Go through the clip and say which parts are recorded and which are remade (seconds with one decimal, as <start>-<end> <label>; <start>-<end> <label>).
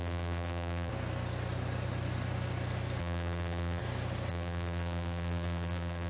0.0-0.9 remade; 0.9-3.0 recorded; 3.0-3.8 remade; 3.8-4.3 recorded; 4.3-6.1 remade